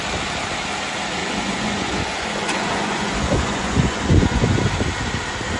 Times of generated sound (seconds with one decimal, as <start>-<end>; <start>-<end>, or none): 1.2-4.6